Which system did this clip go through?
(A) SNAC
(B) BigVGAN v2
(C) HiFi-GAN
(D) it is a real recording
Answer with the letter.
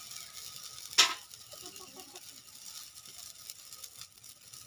D